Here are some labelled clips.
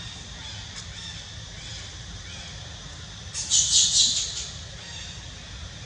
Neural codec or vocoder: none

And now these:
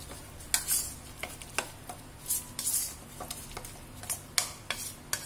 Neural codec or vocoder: none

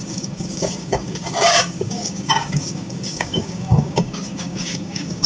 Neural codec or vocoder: codec, DAC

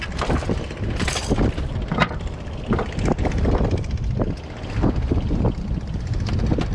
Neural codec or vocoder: none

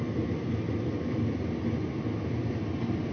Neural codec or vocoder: none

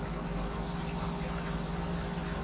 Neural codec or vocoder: none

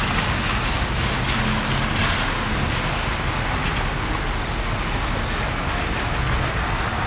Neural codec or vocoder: none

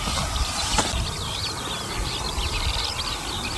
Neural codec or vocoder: none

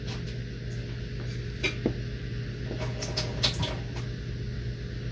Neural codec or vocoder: none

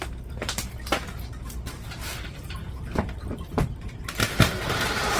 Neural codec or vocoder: vocoder, BigVGAN v2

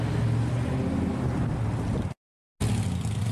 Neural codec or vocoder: none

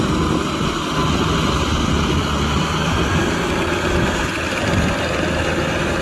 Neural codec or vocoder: none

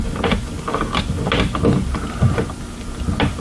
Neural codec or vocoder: none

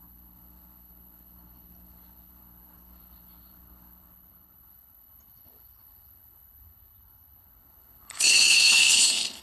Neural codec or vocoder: codec, HILCodec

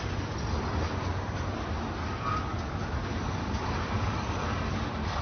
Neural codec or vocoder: none